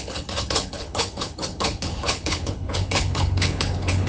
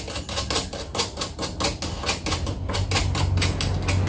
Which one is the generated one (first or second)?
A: first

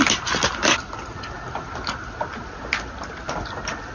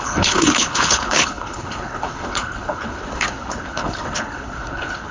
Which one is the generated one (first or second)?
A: second